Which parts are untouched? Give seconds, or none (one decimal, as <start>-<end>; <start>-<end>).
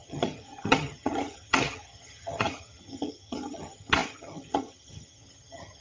none